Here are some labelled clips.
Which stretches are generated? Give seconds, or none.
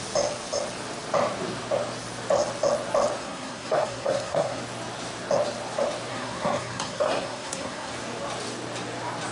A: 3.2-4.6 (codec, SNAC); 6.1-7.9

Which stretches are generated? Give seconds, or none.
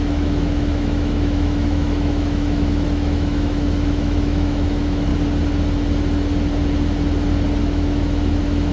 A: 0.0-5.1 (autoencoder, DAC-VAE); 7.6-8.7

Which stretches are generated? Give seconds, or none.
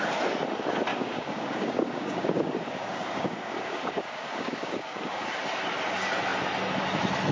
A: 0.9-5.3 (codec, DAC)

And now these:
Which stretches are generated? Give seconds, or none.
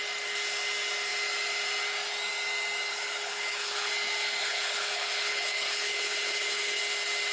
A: 2.9-3.9 (codec, HILCodec); 4.4-6.8